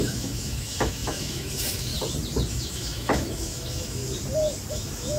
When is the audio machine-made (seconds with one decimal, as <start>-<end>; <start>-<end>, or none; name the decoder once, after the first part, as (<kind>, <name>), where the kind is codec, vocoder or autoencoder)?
0.0-1.9 (autoencoder, DAC-VAE); 2.5-4.0; 4.7-5.2